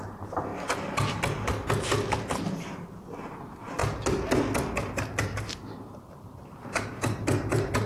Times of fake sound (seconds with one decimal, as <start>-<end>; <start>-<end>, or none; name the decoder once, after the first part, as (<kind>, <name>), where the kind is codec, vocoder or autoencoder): 0.0-0.5 (vocoder, BigVGAN v2); 2.5-3.8; 5.2-7.9